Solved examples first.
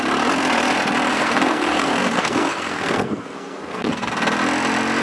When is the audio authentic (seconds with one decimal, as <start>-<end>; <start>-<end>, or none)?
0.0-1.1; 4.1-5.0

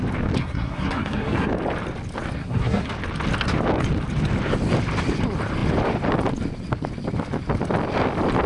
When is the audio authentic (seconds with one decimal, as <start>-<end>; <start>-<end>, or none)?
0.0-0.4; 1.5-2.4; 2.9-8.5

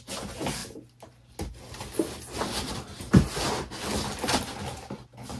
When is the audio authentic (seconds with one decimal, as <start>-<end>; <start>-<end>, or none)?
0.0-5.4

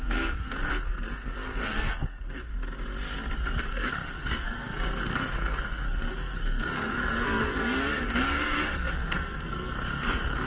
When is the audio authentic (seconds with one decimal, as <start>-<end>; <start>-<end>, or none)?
2.5-3.6